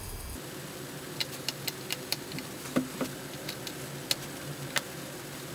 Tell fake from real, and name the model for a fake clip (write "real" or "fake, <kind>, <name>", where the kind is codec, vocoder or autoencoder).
real